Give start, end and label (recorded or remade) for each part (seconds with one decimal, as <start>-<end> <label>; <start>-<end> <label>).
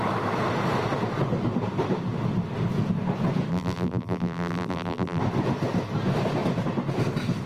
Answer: 0.0-3.5 recorded; 3.5-5.2 remade; 5.2-7.5 recorded